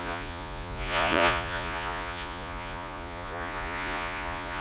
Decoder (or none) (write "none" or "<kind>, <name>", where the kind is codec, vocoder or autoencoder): vocoder, Vocos